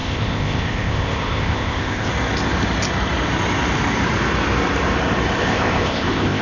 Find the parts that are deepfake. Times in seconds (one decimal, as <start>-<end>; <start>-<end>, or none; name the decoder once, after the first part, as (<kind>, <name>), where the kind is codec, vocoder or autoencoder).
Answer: 0.0-2.1 (codec, ZipCodec); 5.4-6.4